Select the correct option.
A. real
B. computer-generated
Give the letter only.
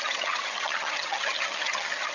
B